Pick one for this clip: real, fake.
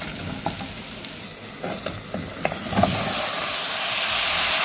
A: real